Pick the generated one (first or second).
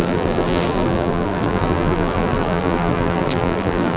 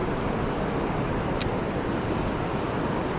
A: first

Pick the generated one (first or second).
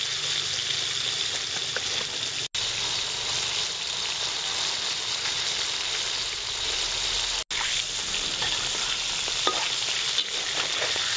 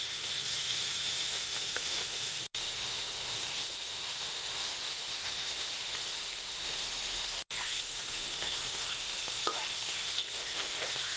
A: second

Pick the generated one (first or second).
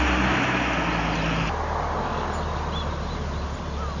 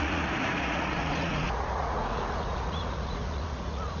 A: second